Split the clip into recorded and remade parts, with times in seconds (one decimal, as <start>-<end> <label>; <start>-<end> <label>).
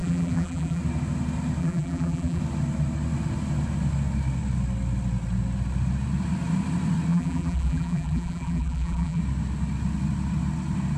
0.0-0.8 remade; 0.8-1.6 recorded; 1.6-2.4 remade; 2.4-7.1 recorded; 7.1-9.2 remade; 9.2-11.0 recorded